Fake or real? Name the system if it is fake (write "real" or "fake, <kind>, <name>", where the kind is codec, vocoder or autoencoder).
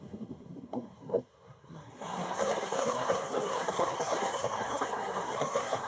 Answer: fake, codec, SNAC